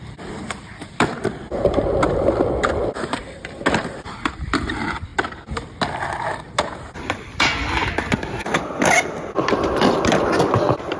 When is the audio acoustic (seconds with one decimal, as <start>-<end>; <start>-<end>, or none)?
3.2-3.8; 5.1-6.8; 8.4-9.7